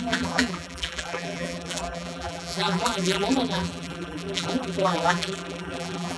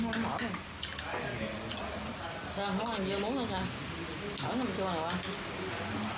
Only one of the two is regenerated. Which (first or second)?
first